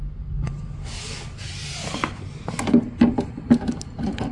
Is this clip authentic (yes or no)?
yes